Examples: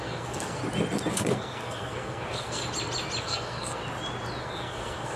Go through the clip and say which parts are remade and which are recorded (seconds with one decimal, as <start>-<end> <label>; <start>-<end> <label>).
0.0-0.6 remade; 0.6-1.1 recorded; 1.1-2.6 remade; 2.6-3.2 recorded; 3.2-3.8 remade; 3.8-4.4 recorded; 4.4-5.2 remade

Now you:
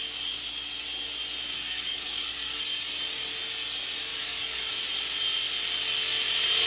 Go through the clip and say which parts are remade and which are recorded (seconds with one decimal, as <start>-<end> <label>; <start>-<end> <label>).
0.0-1.5 recorded; 1.5-2.6 remade; 2.6-4.1 recorded; 4.1-4.7 remade; 4.7-6.7 recorded

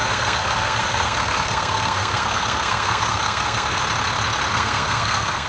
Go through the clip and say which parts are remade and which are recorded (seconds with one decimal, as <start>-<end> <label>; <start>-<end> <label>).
0.0-3.8 remade; 3.8-4.5 recorded; 4.5-5.5 remade

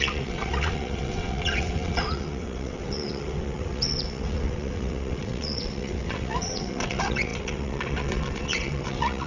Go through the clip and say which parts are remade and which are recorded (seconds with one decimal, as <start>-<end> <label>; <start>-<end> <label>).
0.0-9.3 remade